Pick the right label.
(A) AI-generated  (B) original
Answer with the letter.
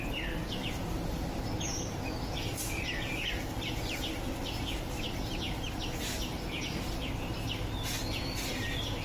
B